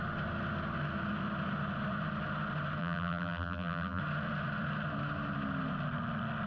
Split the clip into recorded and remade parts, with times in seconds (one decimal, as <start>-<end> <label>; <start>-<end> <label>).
0.0-2.8 recorded; 2.8-4.0 remade; 4.0-6.5 recorded